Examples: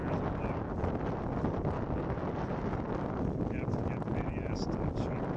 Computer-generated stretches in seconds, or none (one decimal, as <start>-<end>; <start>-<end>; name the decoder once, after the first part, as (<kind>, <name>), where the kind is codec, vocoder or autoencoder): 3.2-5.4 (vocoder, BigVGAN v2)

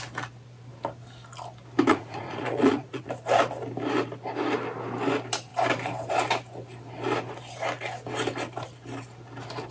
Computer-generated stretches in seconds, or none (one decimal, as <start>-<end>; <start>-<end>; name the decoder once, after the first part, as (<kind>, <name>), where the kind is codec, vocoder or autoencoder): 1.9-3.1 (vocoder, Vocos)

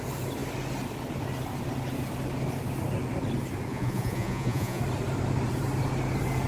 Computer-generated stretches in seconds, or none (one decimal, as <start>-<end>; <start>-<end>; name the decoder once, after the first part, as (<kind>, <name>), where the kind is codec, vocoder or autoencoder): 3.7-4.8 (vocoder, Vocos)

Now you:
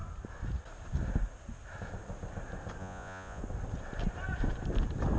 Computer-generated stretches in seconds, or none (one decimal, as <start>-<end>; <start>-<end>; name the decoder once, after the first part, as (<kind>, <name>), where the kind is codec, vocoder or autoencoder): 2.8-3.4 (vocoder, Vocos)

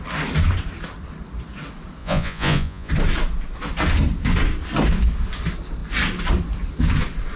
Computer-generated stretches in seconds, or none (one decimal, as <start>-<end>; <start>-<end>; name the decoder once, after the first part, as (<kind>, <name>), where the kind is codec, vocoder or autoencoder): 2.0-2.9 (vocoder, Vocos)